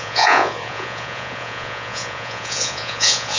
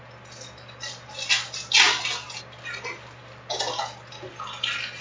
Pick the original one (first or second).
second